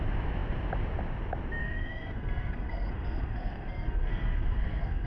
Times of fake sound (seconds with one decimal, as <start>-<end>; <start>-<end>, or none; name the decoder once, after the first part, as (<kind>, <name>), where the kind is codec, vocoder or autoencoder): 1.6-5.1 (codec, SNAC)